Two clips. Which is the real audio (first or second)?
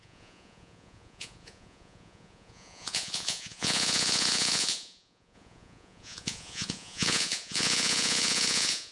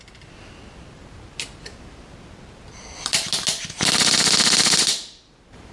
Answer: second